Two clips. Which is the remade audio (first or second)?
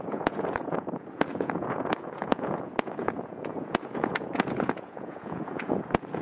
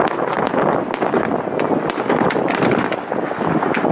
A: first